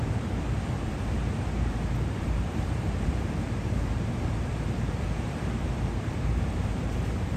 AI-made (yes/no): yes